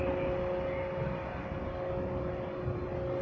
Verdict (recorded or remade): recorded